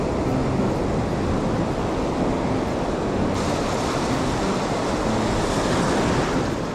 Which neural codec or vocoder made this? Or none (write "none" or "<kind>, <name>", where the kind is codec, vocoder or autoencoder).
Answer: none